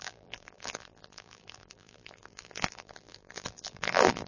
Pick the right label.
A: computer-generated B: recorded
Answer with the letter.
A